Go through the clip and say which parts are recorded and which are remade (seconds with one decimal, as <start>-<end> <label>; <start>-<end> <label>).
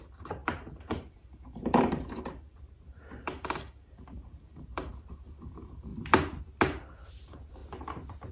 0.0-5.9 remade; 5.9-7.1 recorded; 7.1-7.6 remade; 7.6-8.3 recorded